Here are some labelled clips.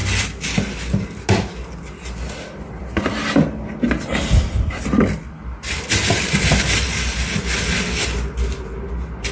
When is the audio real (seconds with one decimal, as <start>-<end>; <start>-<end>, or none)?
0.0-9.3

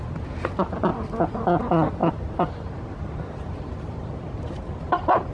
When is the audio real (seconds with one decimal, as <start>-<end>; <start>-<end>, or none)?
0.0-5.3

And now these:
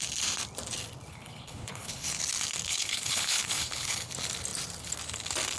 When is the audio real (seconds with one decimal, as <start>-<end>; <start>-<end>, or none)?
0.0-1.1; 2.2-2.7; 4.1-5.6

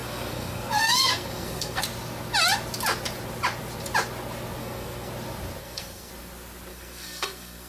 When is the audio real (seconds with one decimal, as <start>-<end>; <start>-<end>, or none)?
1.8-4.6; 5.1-5.6; 6.1-6.7